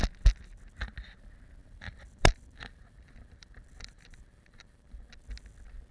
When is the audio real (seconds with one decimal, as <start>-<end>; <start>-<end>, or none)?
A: 0.0-1.6; 5.1-5.9